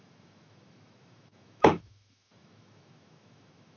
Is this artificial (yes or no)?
yes